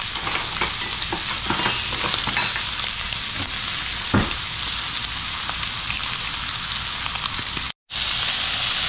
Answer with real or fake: real